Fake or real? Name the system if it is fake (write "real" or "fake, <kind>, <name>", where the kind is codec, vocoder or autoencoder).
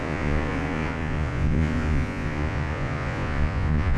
fake, vocoder, Vocos